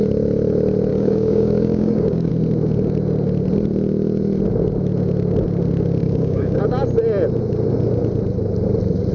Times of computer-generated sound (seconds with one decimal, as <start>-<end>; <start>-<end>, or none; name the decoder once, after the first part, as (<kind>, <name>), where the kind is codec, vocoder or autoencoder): 0.9-2.3 (codec, DAC); 6.0-6.6